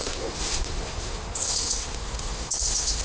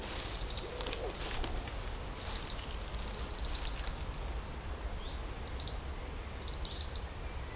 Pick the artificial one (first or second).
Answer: first